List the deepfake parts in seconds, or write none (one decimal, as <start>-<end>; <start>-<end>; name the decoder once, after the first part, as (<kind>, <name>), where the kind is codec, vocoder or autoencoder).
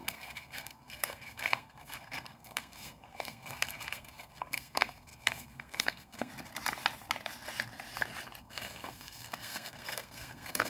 0.0-6.3 (codec, SNAC); 8.4-10.7